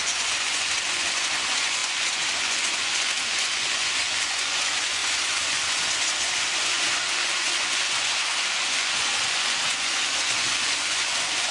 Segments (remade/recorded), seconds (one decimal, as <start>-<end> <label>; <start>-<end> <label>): 0.0-11.5 remade